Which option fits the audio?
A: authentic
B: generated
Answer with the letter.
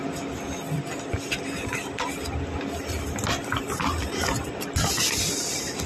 A